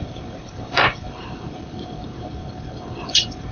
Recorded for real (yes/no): no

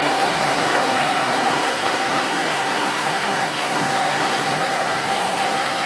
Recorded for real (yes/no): no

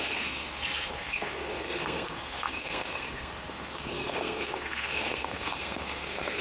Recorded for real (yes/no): no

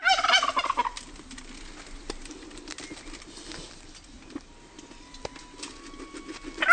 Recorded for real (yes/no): yes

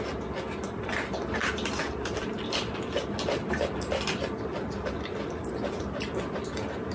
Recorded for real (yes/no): yes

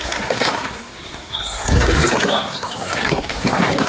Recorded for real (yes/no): no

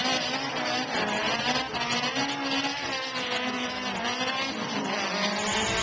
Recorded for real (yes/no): yes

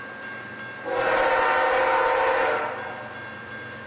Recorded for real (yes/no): yes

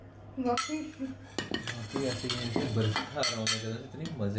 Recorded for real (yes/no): yes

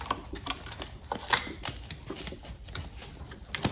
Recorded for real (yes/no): no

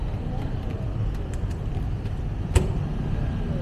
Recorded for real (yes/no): yes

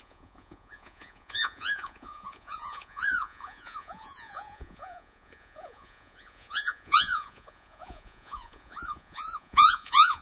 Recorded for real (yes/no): no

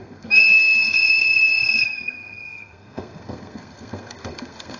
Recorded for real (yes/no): no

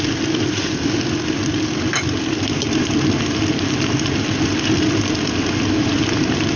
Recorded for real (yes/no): yes